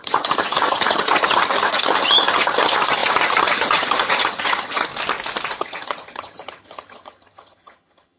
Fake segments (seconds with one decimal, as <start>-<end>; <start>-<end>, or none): 0.0-4.9; 5.6-8.2